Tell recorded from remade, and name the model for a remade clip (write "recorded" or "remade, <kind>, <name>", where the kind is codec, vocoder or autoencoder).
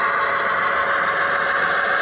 recorded